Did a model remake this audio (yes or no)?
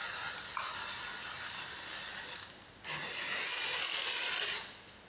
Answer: no